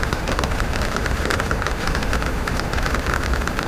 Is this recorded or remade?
remade